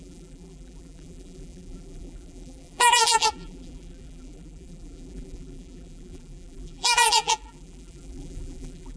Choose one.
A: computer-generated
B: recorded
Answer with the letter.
A